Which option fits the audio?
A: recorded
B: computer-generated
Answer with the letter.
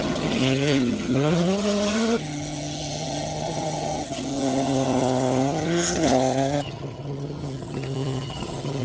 B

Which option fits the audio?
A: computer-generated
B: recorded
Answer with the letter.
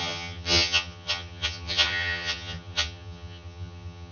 A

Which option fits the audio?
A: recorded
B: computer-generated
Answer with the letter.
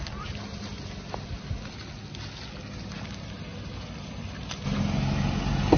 A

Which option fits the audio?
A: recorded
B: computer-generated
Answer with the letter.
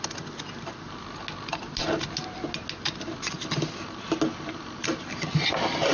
A